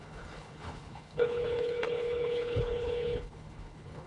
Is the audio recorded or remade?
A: remade